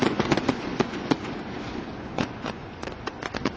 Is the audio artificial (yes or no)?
yes